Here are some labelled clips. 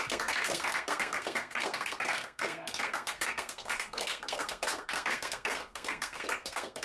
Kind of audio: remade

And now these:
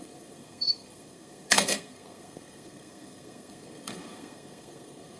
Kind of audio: remade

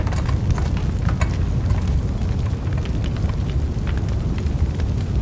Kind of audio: recorded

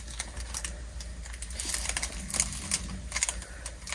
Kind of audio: recorded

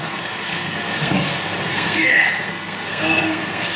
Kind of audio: remade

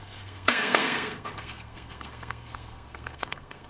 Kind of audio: remade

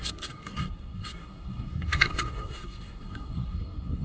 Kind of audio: remade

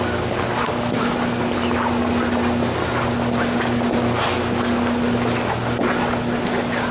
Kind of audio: recorded